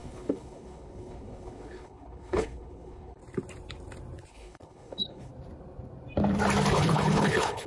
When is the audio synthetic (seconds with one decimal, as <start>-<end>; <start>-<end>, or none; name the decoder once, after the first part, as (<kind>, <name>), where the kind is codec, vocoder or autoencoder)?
0.0-3.2 (codec, HILCodec); 4.3-5.3; 6.7-7.7